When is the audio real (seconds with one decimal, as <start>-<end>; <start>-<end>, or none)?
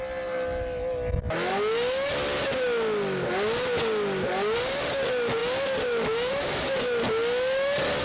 0.0-8.0